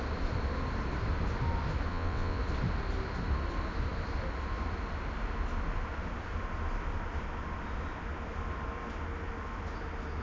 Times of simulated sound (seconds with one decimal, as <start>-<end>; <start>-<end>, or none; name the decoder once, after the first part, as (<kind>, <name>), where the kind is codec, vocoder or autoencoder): 1.9-2.4 (vocoder, WaveNeXt)